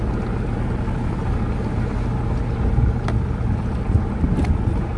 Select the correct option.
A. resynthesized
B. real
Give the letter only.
B